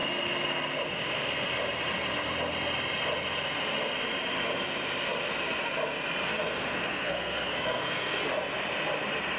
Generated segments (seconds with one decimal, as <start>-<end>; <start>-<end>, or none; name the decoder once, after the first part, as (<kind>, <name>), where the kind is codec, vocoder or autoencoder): 6.3-8.2 (codec, SNAC)